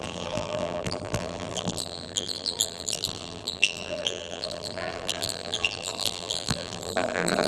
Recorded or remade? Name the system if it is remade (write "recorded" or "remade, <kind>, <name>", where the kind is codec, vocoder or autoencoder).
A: remade, vocoder, BigVGAN v2